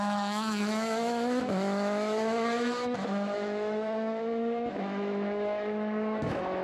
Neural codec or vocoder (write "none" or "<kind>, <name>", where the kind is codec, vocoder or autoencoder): autoencoder, DAC-VAE